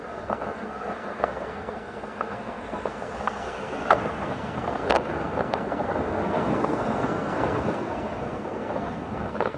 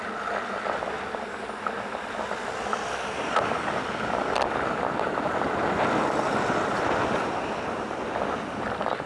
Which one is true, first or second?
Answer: second